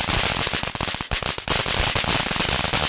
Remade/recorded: recorded